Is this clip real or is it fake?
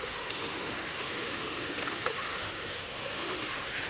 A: fake